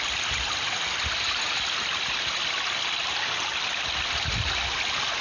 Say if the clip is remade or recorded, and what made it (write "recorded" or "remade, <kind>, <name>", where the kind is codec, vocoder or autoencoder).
recorded